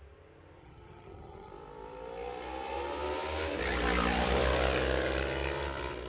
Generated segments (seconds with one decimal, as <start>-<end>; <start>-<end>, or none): 0.6-1.5